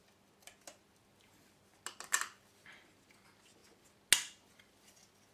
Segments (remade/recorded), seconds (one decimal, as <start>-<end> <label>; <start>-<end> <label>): 0.0-5.3 recorded